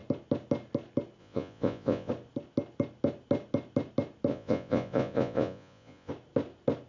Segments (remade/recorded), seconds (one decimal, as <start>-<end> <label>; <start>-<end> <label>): 0.0-1.2 recorded; 1.2-2.1 remade; 2.1-4.3 recorded; 4.3-6.1 remade; 6.1-6.9 recorded